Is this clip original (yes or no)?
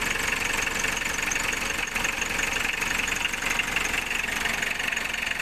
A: yes